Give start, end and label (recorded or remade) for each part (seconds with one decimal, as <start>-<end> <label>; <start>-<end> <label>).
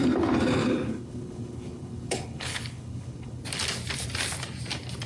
0.0-0.6 recorded; 0.6-3.4 remade; 3.4-5.1 recorded